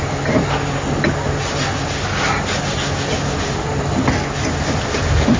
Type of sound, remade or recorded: recorded